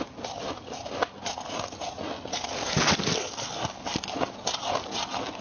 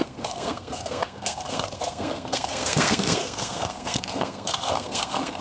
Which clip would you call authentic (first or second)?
first